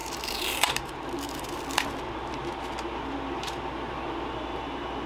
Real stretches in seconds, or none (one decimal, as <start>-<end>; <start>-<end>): 1.6-5.1